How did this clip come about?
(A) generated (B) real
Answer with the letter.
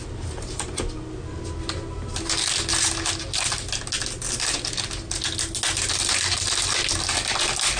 B